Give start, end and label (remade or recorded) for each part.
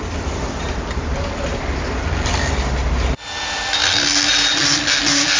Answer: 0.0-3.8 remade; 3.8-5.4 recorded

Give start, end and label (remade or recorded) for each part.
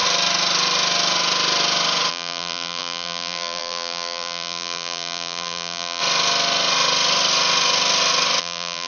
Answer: 0.0-2.1 recorded; 2.1-6.0 remade; 6.0-8.4 recorded; 8.4-8.9 remade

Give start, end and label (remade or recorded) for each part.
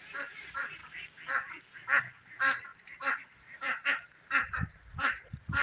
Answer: 0.0-0.8 remade; 0.8-2.0 recorded; 2.0-5.6 remade